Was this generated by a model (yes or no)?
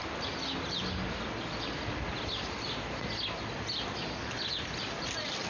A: yes